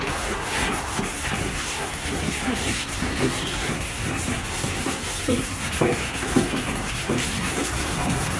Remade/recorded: remade